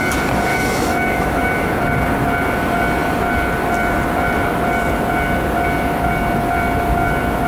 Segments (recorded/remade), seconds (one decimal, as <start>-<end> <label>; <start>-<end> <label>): 0.0-0.5 recorded; 0.5-1.7 remade; 1.7-7.5 recorded